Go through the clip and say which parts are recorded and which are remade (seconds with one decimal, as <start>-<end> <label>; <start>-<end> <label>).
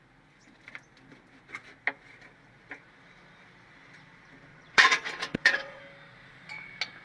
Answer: 0.0-4.5 recorded; 4.5-5.8 remade; 5.8-7.0 recorded